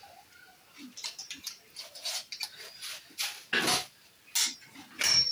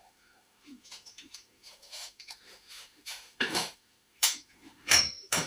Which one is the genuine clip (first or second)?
first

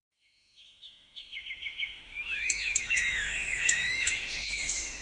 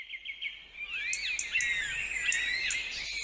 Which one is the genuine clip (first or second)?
second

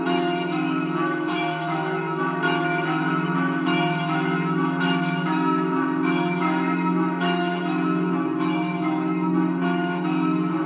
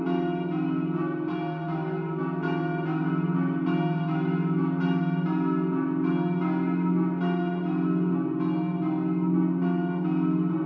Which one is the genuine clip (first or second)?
second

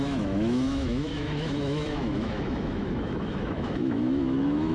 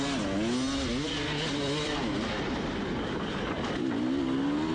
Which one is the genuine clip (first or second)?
second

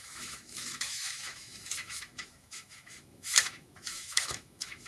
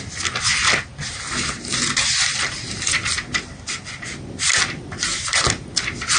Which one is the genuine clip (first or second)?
second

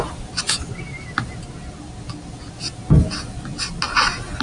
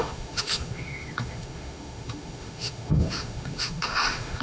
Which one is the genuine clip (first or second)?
first